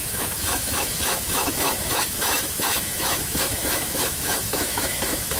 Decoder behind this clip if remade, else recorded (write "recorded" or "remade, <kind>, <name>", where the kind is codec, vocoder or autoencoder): remade, autoencoder, DAC-VAE